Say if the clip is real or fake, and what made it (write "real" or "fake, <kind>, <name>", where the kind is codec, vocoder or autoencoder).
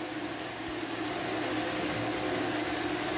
real